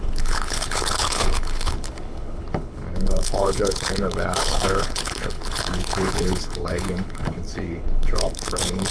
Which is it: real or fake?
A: fake